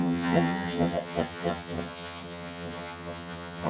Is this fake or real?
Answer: fake